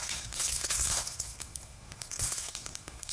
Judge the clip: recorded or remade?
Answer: remade